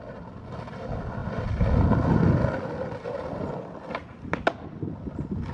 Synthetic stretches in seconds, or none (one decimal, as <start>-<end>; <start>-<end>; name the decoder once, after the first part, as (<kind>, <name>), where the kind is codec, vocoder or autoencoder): none